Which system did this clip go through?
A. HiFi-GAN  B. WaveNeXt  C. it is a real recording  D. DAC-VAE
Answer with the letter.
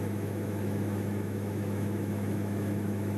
D